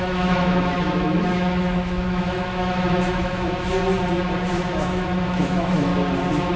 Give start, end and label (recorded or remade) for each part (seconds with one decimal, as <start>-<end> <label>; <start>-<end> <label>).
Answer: 0.0-3.8 remade; 3.8-4.5 recorded; 4.5-5.9 remade; 5.9-6.6 recorded